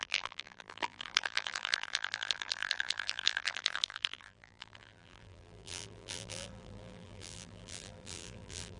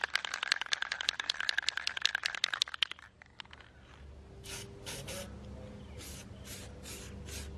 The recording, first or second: second